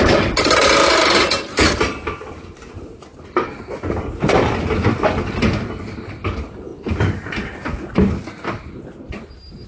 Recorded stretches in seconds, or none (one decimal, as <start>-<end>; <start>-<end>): 0.0-9.7